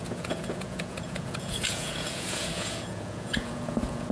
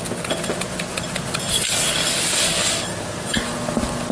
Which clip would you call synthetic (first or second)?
first